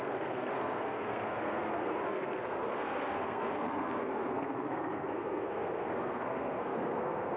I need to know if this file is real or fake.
fake